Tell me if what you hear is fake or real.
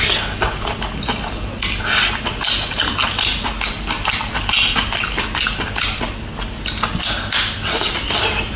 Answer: real